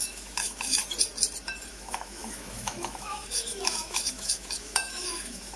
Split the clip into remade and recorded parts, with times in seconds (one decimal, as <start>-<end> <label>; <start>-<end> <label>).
0.0-0.8 remade; 0.8-1.7 recorded; 1.7-5.6 remade